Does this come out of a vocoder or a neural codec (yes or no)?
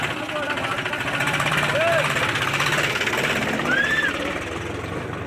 no